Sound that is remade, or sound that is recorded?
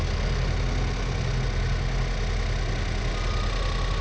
recorded